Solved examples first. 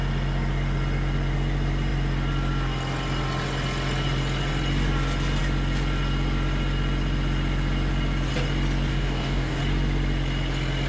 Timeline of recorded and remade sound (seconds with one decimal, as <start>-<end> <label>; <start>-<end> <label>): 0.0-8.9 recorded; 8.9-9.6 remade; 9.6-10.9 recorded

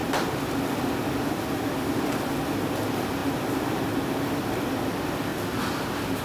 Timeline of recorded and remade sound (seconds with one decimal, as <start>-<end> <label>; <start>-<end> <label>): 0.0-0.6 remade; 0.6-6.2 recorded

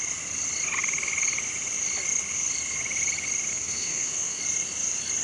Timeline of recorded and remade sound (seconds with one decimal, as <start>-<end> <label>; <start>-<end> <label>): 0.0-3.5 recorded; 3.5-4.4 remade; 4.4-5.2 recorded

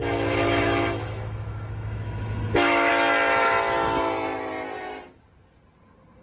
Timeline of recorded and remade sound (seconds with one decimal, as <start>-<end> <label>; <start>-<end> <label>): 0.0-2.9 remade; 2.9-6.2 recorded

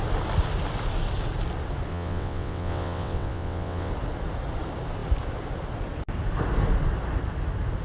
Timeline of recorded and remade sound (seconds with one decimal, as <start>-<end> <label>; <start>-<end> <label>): 0.0-1.9 recorded; 1.9-3.9 remade; 3.9-7.8 recorded

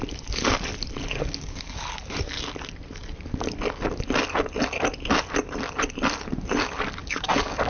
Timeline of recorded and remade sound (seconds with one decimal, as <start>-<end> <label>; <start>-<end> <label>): 0.0-1.1 recorded; 1.1-1.8 remade; 1.8-7.0 recorded; 7.0-7.7 remade

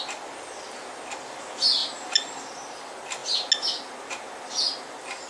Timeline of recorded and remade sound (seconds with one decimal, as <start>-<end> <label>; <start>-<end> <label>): 0.0-5.3 recorded

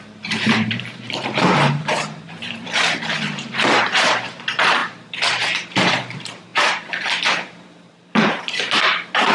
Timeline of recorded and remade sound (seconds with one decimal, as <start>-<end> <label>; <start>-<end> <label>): 0.0-9.3 remade